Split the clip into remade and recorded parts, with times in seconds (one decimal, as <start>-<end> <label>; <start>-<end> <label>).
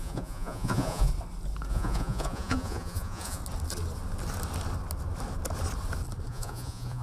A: 0.0-1.1 remade; 1.1-1.7 recorded; 1.7-3.4 remade; 3.4-6.3 recorded; 6.3-7.0 remade